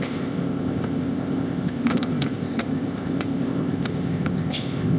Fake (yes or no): yes